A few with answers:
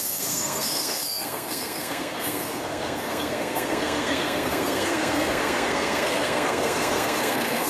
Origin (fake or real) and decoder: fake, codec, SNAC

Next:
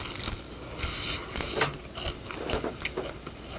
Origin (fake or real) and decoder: real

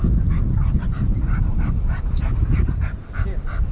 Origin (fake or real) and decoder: real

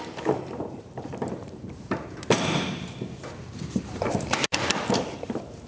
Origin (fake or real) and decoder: fake, vocoder, BigVGAN v2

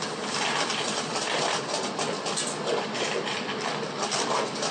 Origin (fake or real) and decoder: real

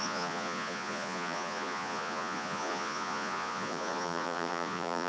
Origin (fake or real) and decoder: fake, vocoder, Vocos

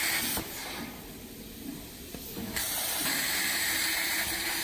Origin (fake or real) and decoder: real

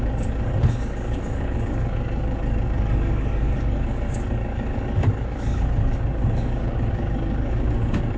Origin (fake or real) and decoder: fake, codec, DAC